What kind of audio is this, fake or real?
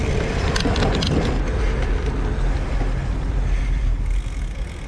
real